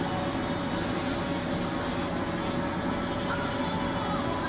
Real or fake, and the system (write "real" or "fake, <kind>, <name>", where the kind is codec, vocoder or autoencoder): real